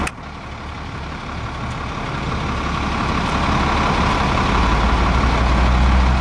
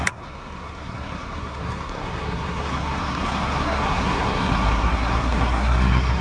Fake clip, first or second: second